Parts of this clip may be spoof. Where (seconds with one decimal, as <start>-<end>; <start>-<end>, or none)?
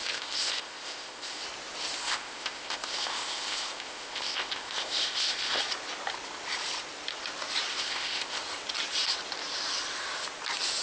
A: 0.0-1.4; 2.0-5.6; 7.7-8.4